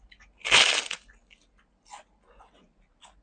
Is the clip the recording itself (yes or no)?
yes